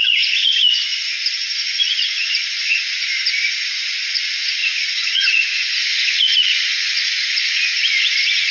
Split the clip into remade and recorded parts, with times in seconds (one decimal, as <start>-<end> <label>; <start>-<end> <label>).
0.0-3.1 remade; 3.1-3.7 recorded; 3.7-8.5 remade